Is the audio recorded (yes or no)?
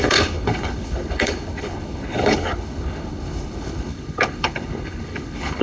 no